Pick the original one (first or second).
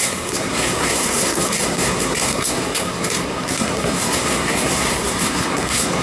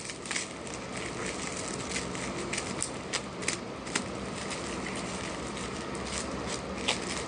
second